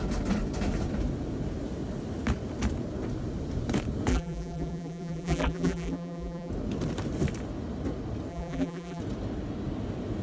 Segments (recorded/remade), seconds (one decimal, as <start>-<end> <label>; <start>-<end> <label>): 0.0-4.1 recorded; 4.1-6.5 remade; 6.5-8.3 recorded; 8.3-9.0 remade; 9.0-10.2 recorded